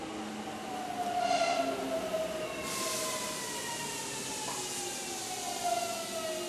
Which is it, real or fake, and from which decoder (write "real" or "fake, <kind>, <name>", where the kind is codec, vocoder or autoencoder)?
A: real